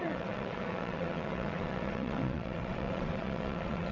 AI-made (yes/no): yes